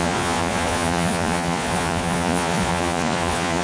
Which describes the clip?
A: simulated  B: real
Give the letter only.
A